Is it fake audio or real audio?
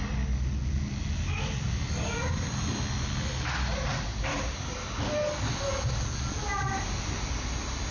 real